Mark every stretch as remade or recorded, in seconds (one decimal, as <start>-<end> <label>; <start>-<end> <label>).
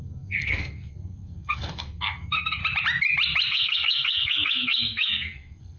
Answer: 0.0-2.6 remade; 2.6-3.5 recorded; 3.5-5.8 remade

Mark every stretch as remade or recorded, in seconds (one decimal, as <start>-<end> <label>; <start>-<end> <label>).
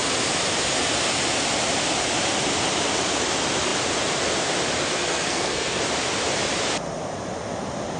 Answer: 0.0-4.9 recorded; 4.9-5.8 remade; 5.8-8.0 recorded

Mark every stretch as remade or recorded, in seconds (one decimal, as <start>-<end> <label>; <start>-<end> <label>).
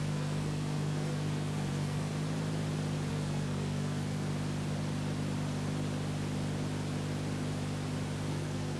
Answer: 0.0-2.1 remade; 2.1-3.1 recorded; 3.1-4.3 remade; 4.3-8.3 recorded; 8.3-8.8 remade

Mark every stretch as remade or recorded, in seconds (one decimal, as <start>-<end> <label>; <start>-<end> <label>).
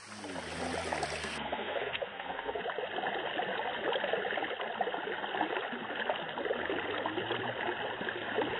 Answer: 0.0-1.2 recorded; 1.2-2.6 remade; 2.6-8.6 recorded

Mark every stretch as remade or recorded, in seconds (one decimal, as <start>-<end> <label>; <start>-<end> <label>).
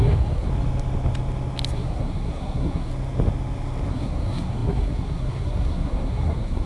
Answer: 0.0-0.5 remade; 0.5-1.7 recorded; 1.7-2.9 remade; 2.9-3.9 recorded; 3.9-6.7 remade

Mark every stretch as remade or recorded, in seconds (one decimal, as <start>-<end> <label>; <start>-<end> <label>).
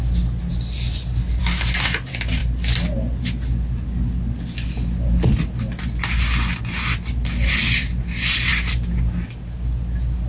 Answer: 0.0-10.3 recorded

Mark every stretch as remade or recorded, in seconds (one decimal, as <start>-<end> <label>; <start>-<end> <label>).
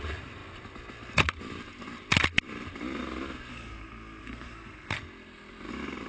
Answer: 0.0-3.5 recorded; 3.5-4.9 remade; 4.9-6.1 recorded